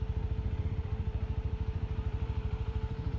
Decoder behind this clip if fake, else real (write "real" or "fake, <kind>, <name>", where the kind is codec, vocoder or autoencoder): fake, vocoder, BigVGAN v2